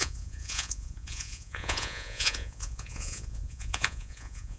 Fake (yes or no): yes